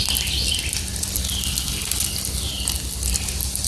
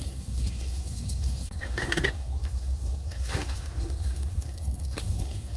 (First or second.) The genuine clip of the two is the first